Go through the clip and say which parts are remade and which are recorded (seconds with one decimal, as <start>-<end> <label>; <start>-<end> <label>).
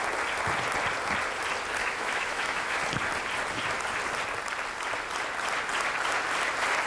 0.0-1.8 recorded; 1.8-2.8 remade; 2.8-6.9 recorded